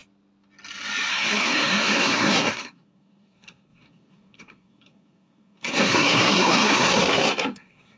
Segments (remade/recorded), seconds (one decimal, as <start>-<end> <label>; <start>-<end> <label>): 0.0-1.1 recorded; 1.1-8.0 remade